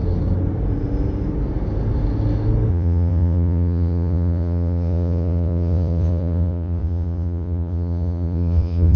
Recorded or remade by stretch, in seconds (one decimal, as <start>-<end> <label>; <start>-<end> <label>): 0.0-2.7 recorded; 2.7-9.0 remade